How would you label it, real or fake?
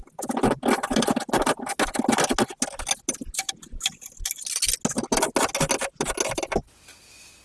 real